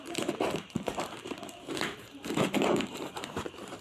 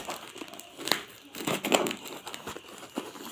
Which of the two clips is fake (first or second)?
first